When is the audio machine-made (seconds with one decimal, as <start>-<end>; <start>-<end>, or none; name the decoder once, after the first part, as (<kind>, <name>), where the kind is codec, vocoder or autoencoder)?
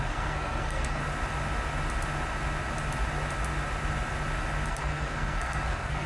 0.0-1.0 (codec, SNAC); 4.7-6.1